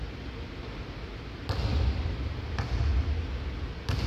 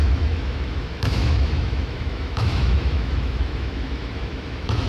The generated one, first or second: second